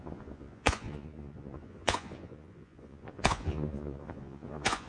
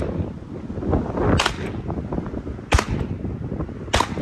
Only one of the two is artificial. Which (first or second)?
first